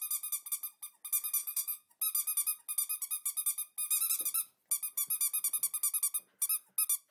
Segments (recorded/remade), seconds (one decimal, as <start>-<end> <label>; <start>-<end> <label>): 0.0-1.4 recorded; 1.4-1.9 remade; 1.9-7.1 recorded